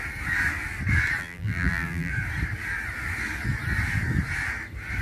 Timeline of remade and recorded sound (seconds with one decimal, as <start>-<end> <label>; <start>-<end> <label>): 0.0-1.2 recorded; 1.2-2.1 remade; 2.1-5.0 recorded